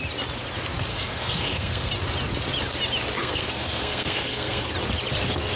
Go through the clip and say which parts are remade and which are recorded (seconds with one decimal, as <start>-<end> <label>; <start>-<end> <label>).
0.0-0.9 recorded; 0.9-1.9 remade; 1.9-3.2 recorded; 3.2-4.7 remade; 4.7-5.6 recorded